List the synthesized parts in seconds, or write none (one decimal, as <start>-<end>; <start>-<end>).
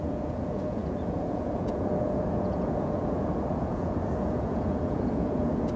0.0-5.8